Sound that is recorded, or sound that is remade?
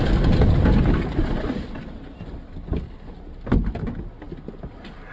recorded